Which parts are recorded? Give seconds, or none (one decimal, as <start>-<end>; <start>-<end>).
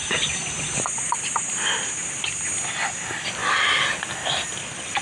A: 0.5-3.4